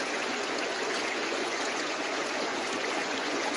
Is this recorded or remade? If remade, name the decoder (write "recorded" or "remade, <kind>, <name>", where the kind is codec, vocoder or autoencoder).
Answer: remade, vocoder, Vocos